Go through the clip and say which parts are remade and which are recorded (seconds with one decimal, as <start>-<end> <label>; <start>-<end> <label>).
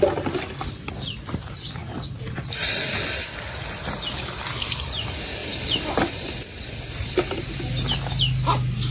0.0-8.9 recorded